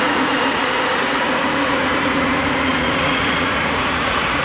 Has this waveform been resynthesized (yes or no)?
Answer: yes